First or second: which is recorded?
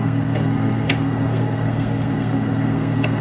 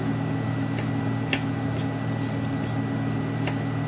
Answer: second